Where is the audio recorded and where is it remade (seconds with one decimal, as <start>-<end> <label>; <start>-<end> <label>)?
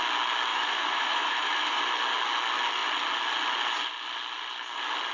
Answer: 0.0-0.5 recorded; 0.5-1.8 remade; 1.8-5.1 recorded